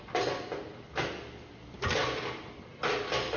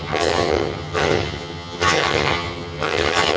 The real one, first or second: first